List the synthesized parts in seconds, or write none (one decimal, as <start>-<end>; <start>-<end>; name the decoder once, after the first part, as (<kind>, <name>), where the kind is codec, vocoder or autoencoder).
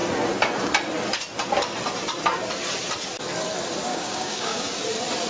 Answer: 3.9-4.7 (codec, DAC)